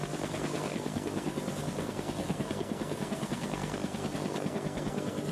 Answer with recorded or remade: remade